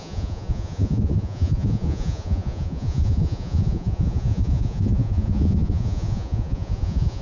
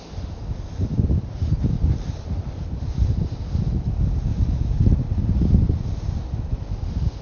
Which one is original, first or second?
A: second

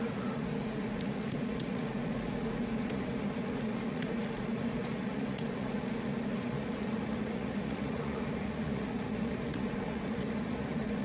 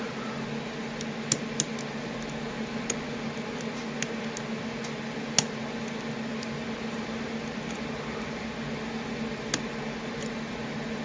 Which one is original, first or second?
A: second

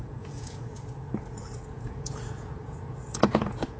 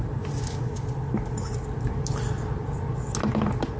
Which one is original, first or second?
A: second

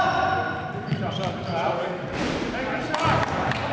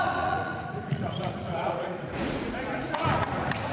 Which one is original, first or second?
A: first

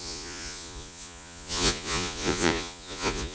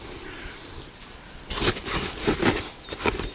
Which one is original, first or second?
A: second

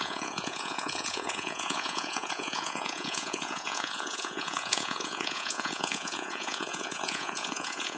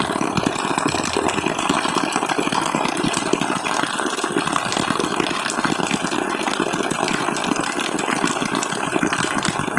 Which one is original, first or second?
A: second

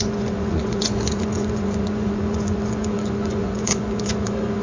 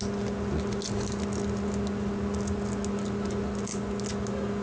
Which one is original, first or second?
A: second